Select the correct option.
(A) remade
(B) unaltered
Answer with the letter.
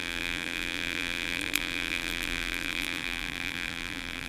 A